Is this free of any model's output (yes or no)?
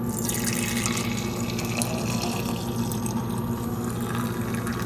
yes